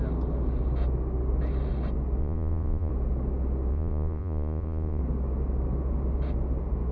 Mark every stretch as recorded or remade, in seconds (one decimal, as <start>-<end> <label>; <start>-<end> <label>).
0.0-2.2 recorded; 2.2-2.9 remade; 2.9-3.7 recorded; 3.7-5.0 remade; 5.0-6.9 recorded